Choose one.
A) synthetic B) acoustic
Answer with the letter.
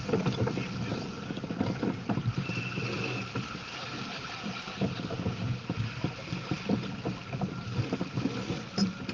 B